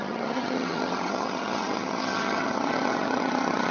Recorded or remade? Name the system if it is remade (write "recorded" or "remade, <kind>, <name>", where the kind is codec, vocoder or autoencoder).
remade, vocoder, HiFi-GAN